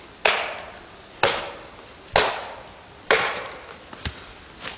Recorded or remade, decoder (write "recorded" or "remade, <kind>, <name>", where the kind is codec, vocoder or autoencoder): recorded